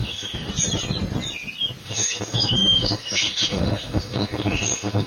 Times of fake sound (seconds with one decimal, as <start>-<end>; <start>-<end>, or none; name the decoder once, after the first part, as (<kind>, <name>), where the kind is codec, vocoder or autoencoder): 0.0-0.5 (autoencoder, DAC-VAE); 1.8-5.1